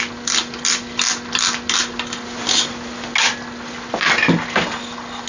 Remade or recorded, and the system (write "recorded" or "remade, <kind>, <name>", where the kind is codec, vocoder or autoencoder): recorded